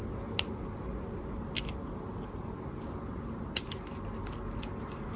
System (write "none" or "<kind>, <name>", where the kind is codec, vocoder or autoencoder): none